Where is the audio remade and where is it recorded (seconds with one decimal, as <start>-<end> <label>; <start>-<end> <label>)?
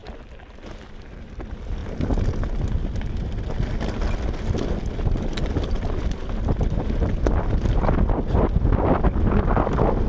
0.0-10.1 recorded